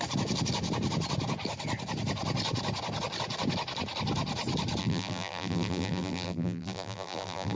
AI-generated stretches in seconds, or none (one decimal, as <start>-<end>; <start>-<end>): 4.8-7.6